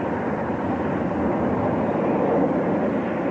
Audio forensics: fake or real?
real